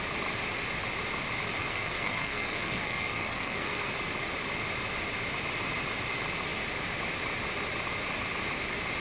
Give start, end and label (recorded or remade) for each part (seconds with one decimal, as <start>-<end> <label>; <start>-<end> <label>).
0.0-1.6 recorded; 1.6-3.9 remade; 3.9-9.0 recorded